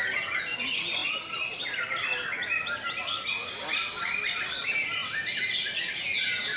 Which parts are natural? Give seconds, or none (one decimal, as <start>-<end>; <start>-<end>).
0.0-6.6

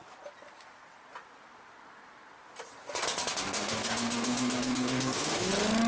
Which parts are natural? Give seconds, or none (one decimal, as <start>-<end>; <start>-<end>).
0.0-3.3; 5.5-5.9

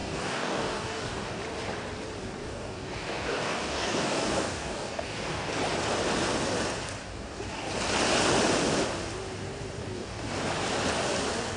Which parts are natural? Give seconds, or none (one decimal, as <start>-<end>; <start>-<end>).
1.4-2.4; 5.5-7.0; 7.7-9.8; 10.3-11.6

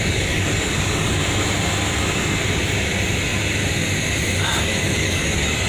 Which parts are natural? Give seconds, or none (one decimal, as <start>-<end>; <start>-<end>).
1.2-4.6

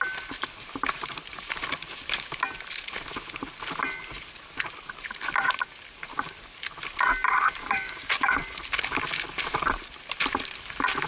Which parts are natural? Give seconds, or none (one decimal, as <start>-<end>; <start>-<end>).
0.0-7.6; 8.4-11.1

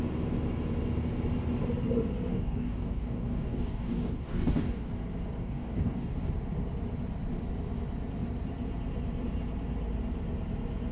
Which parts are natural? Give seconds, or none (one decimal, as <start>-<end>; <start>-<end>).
0.0-2.3; 4.9-5.4; 6.3-10.9

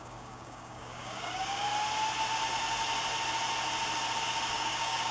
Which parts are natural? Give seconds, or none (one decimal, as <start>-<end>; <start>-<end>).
1.7-4.5